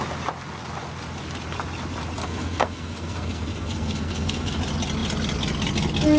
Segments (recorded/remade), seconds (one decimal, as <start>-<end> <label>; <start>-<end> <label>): 0.0-2.2 recorded; 2.2-4.6 remade; 4.6-6.2 recorded